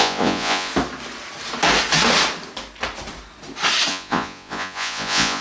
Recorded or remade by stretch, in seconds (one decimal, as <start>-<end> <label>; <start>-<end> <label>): 0.0-0.7 remade; 0.7-3.9 recorded; 3.9-5.4 remade